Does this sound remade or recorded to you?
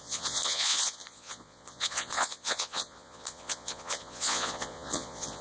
remade